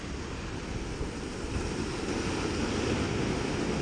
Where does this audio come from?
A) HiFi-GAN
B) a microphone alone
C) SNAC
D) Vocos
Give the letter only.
B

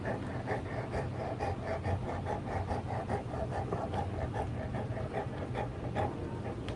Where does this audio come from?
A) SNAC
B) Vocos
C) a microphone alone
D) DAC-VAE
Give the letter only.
C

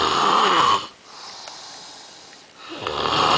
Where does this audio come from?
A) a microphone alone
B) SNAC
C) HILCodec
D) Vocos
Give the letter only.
A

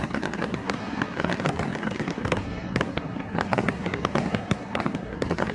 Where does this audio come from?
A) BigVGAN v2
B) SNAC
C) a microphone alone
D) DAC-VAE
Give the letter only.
B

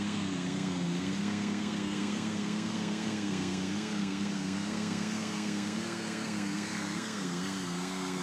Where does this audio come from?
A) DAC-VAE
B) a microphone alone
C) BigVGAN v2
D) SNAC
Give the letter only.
D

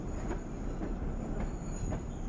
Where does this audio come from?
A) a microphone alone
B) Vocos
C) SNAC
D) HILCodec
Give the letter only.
A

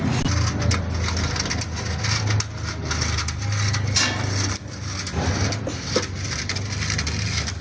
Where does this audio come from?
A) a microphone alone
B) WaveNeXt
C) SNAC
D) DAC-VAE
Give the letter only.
A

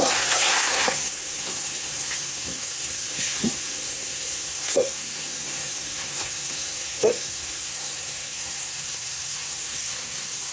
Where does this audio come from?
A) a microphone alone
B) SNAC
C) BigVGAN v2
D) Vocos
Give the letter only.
B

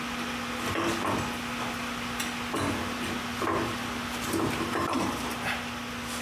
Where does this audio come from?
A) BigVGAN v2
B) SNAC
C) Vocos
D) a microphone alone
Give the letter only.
D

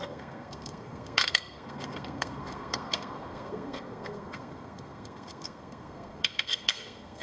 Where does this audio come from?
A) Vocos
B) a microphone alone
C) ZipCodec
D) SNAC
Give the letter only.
D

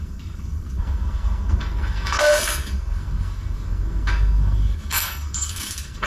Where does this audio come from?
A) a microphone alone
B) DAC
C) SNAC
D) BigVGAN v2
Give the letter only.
C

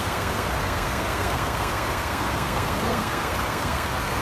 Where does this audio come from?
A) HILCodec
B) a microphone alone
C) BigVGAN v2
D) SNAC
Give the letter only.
D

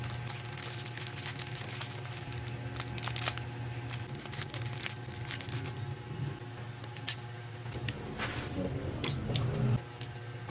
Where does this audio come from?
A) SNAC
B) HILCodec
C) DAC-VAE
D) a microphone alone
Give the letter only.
D